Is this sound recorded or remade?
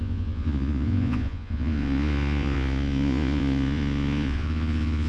remade